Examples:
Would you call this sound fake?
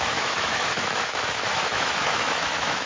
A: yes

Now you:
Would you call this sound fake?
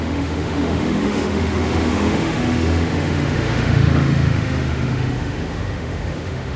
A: yes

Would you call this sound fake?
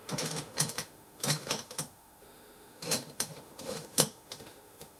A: yes